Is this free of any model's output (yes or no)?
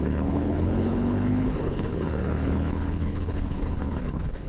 no